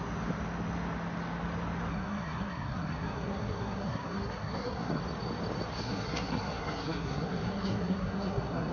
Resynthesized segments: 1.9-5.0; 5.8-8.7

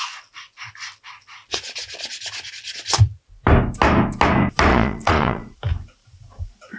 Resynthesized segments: 4.7-5.6

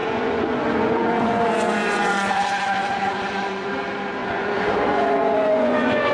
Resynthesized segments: 0.0-3.7; 4.2-6.1